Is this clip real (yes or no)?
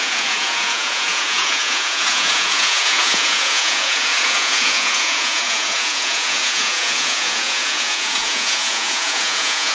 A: no